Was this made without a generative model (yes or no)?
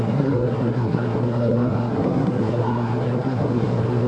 no